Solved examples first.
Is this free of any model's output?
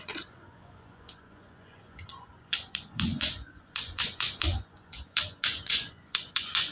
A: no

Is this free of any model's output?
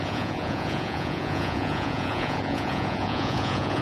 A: no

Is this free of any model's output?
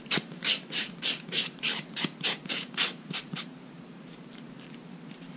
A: no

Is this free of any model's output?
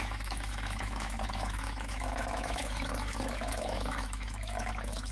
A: no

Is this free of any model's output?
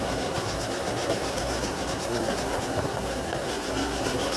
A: no